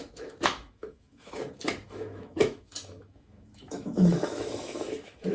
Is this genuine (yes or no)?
no